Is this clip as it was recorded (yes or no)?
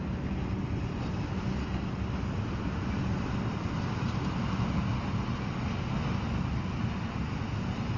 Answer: yes